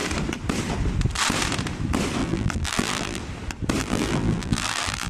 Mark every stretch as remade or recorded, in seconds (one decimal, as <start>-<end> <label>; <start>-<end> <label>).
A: 0.0-2.2 recorded; 2.2-3.2 remade; 3.2-3.8 recorded; 3.8-5.1 remade